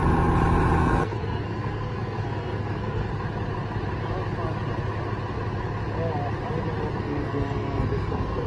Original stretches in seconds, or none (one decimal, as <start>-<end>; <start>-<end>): 0.0-0.8; 3.1-7.0